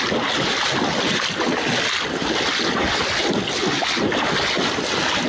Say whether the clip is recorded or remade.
recorded